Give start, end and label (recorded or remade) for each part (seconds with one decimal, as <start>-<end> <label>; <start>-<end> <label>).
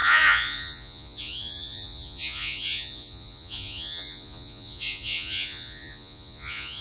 0.0-6.8 remade